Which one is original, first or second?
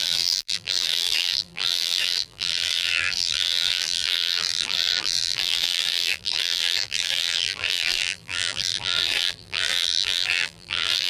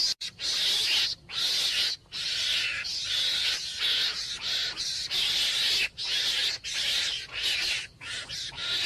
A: second